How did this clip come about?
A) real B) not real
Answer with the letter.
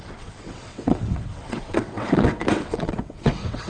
B